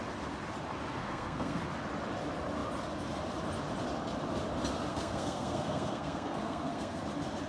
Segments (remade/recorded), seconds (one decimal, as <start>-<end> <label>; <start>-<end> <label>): 0.0-1.0 recorded; 1.0-1.6 remade; 1.6-4.9 recorded; 4.9-7.0 remade; 7.0-7.5 recorded